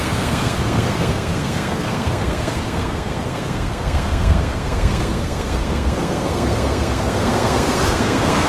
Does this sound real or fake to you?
fake